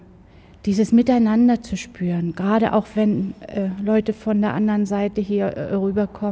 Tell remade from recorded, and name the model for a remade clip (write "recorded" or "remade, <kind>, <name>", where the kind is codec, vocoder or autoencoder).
recorded